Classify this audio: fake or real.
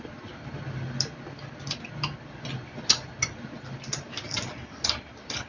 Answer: real